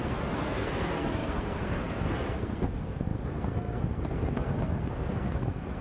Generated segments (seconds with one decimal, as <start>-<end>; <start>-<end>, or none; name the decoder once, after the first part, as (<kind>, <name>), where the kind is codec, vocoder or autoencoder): 0.0-5.8 (codec, SNAC)